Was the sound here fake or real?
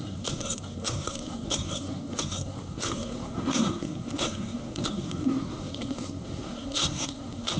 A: fake